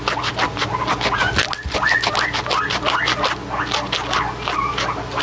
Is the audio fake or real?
real